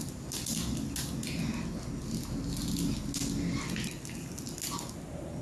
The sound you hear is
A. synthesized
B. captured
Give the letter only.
B